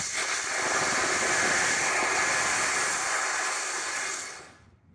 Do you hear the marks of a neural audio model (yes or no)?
no